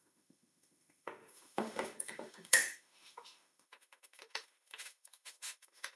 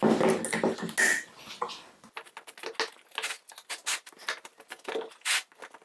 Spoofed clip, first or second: first